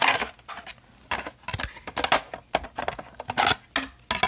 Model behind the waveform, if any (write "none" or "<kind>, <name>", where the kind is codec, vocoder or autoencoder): none